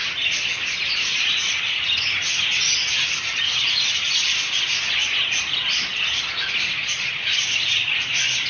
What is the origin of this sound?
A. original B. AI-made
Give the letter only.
A